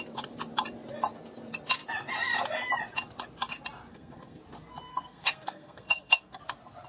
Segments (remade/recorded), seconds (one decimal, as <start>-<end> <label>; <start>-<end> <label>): 0.0-3.9 recorded; 3.9-4.4 remade; 4.4-4.9 recorded; 4.9-6.4 remade; 6.4-6.9 recorded